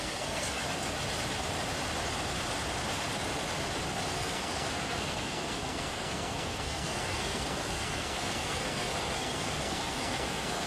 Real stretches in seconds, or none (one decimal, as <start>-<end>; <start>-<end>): 0.6-4.1

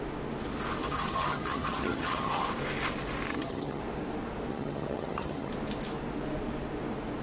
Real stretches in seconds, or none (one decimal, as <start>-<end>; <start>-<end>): 0.0-0.8; 2.4-3.3; 3.8-4.5; 5.5-7.2

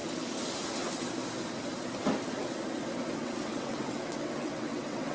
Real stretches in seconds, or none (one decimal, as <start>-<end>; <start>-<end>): 0.0-3.1

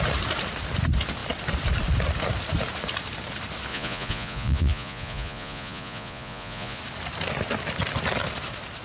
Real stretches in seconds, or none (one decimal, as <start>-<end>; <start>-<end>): 0.0-3.7; 6.8-8.8

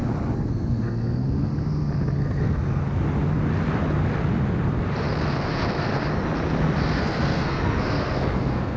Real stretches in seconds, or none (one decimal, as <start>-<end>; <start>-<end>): 0.0-0.5; 1.5-2.2; 2.8-5.5; 5.9-6.8

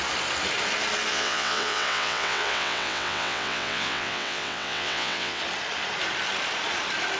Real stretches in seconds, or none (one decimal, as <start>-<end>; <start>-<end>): 0.0-1.1; 5.4-7.2